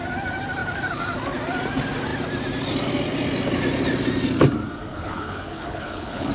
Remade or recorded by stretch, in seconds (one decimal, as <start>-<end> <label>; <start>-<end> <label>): 0.0-4.9 recorded; 4.9-6.3 remade